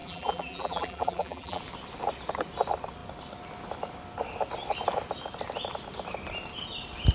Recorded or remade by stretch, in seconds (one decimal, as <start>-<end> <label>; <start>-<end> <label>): 0.0-1.6 remade; 1.6-7.1 recorded